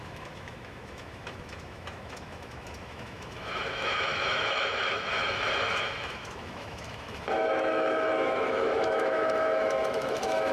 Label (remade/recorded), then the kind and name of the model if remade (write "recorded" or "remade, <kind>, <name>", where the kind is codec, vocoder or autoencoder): remade, autoencoder, DAC-VAE